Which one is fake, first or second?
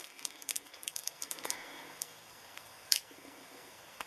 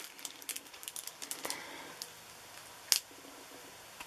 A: first